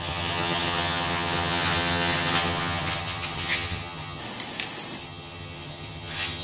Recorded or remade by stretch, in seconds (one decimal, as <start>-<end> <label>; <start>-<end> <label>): 0.0-4.2 remade; 4.2-5.0 recorded; 5.0-6.4 remade